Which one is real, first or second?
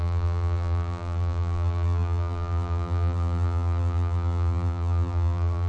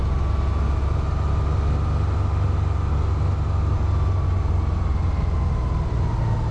second